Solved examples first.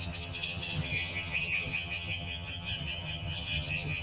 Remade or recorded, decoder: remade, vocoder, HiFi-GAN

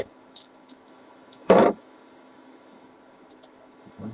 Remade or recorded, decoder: remade, autoencoder, DAC-VAE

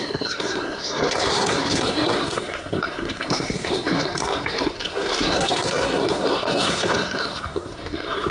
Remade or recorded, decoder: remade, codec, SNAC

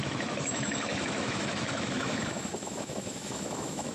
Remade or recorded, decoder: remade, autoencoder, DAC-VAE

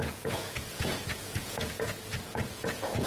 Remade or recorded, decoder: remade, vocoder, Vocos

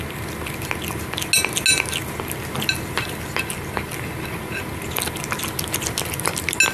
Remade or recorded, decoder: recorded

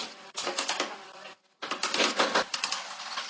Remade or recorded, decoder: recorded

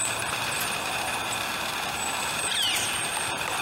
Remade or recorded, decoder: remade, vocoder, BigVGAN v2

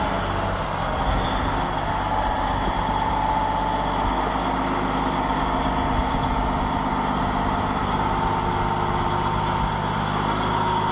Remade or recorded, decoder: recorded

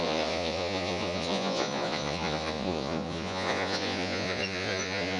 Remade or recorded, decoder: remade, vocoder, Vocos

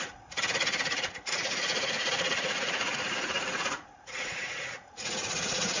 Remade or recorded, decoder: remade, vocoder, Vocos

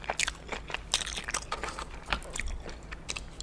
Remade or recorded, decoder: recorded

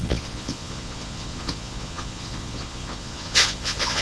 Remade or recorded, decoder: remade, vocoder, Vocos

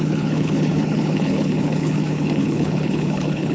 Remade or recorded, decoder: remade, codec, HILCodec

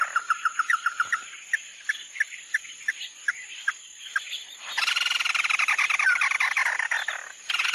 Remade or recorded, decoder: recorded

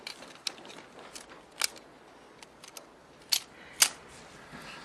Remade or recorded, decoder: recorded